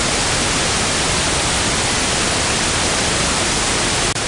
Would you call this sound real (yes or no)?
yes